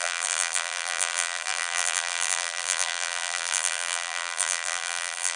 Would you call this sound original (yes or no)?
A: no